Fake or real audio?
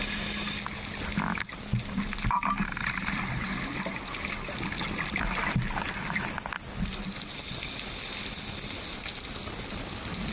real